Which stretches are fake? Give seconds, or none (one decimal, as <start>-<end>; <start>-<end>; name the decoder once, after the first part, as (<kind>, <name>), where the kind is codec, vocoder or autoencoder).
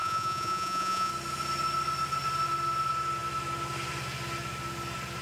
0.0-1.1 (vocoder, Vocos)